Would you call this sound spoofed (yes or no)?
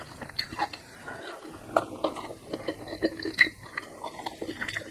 no